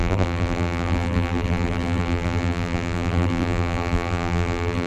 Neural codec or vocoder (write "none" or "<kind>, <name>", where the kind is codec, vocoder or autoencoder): vocoder, BigVGAN v2